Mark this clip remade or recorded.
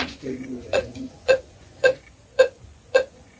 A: remade